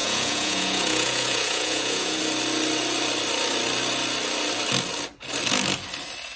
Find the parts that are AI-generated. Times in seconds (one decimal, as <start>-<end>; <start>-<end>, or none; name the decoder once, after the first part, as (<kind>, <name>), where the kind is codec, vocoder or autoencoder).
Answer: 0.0-2.2 (vocoder, Vocos)